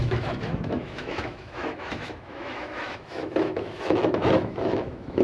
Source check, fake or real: fake